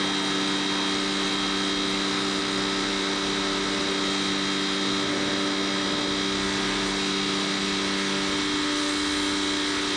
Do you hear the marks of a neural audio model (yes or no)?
no